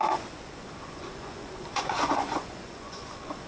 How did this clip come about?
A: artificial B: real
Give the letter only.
A